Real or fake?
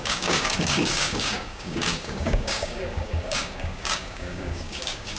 fake